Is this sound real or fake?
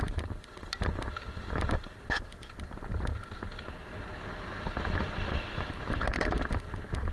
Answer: real